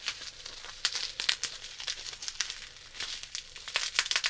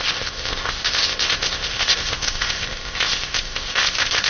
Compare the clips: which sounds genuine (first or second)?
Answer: first